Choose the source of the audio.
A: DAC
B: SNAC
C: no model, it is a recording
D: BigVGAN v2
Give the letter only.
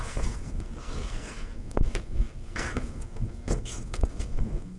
B